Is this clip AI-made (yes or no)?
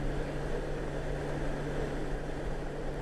no